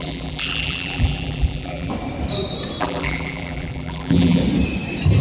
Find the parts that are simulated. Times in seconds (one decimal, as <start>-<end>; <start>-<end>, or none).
0.0-1.9; 2.8-4.4